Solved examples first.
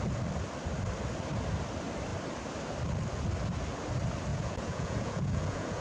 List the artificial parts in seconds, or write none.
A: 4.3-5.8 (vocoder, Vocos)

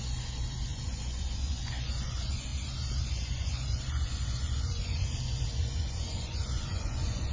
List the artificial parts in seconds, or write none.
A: 0.0-2.5 (vocoder, Vocos); 3.1-7.3

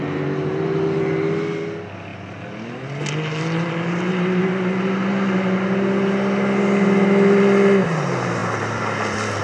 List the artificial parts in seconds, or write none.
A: none

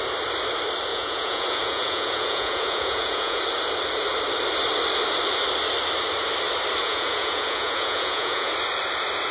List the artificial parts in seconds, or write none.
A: 0.9-3.4 (vocoder, Vocos); 6.8-8.5

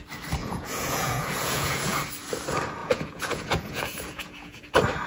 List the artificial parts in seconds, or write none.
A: 0.4-2.0 (vocoder, Vocos); 2.8-4.6